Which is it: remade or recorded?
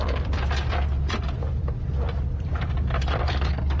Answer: remade